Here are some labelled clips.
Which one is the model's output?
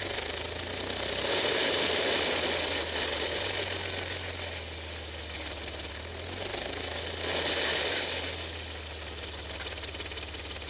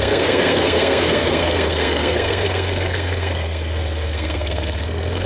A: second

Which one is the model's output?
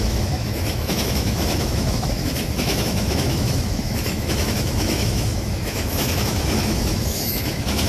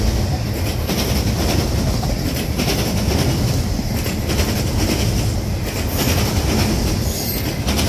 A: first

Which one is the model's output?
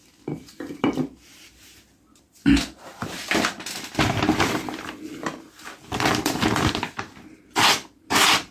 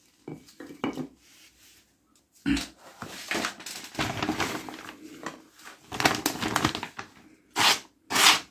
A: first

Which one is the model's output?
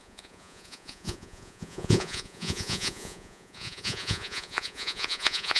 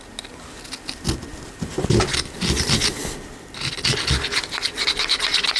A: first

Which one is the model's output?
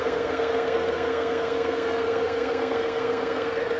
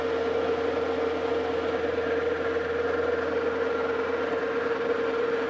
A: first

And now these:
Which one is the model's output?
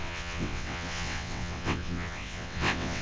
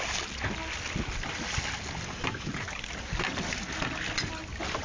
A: first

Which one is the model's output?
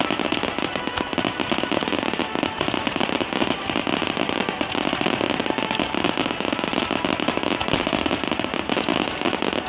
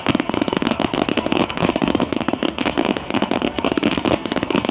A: second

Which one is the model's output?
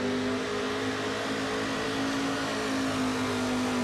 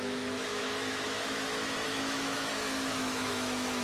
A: second